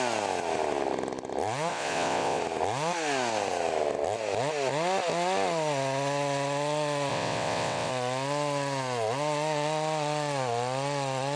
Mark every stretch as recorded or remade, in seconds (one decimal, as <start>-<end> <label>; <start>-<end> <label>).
0.0-1.7 recorded; 1.7-2.4 remade; 2.4-7.1 recorded; 7.1-7.9 remade; 7.9-11.4 recorded